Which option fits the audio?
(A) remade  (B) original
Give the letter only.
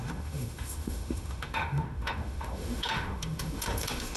A